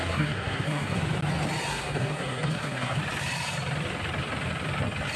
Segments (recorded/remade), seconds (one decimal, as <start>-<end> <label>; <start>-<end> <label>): 0.0-1.0 remade; 1.0-1.7 recorded; 1.7-3.0 remade; 3.0-5.2 recorded